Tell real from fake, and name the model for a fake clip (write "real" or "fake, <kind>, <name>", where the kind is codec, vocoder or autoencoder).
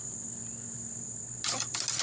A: real